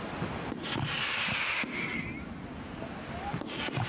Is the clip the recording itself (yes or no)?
yes